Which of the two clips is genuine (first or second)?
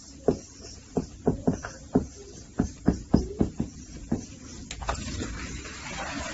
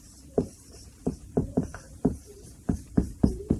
first